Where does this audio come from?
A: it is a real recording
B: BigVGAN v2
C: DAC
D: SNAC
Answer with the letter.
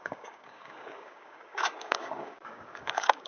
C